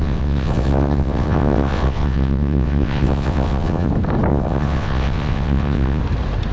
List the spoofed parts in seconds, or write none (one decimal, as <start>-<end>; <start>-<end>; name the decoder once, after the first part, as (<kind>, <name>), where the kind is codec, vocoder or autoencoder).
0.0-3.9 (vocoder, WaveNeXt); 4.3-6.0